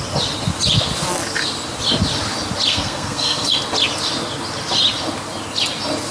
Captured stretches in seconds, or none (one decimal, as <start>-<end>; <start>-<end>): 0.0-2.7; 3.5-6.1